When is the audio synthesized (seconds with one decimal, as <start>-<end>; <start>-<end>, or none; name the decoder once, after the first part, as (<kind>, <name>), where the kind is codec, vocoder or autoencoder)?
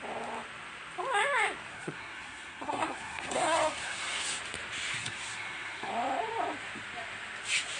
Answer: 1.7-4.4 (codec, SNAC); 4.9-5.9